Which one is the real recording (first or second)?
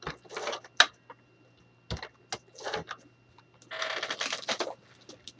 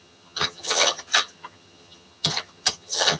first